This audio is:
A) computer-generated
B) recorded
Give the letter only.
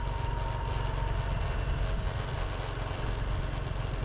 B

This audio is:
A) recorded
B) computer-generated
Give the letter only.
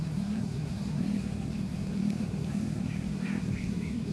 B